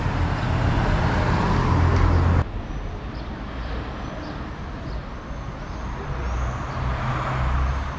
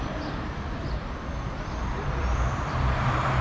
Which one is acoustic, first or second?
first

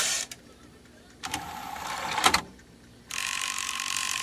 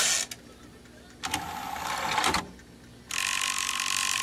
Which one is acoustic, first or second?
second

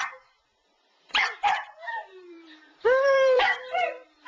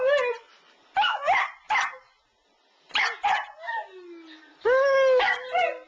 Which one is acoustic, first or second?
second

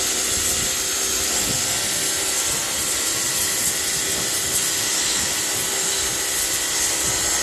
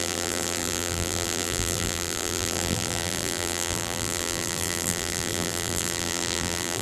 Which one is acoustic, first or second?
first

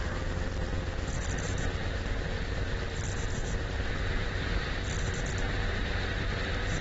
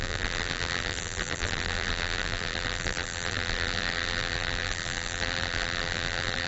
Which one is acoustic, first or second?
first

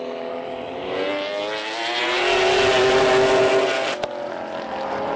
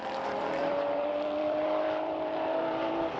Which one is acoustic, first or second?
first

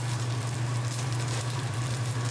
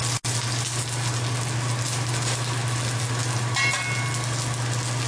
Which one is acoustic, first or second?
second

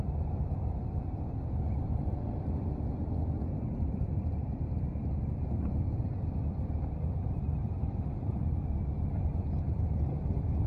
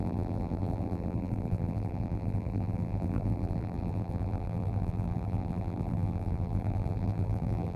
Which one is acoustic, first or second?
first